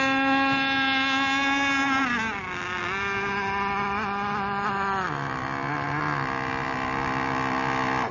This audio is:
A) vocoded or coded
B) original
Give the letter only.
B